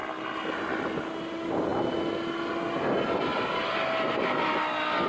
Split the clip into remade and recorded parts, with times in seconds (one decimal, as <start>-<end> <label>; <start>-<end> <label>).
0.0-5.1 recorded

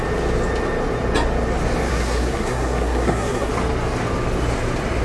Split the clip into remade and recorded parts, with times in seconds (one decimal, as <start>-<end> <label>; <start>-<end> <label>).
0.0-1.9 recorded; 1.9-3.5 remade; 3.5-5.0 recorded